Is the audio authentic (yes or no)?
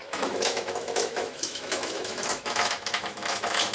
no